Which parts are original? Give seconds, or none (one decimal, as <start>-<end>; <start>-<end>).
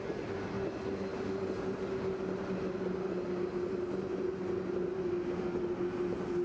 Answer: 0.0-6.4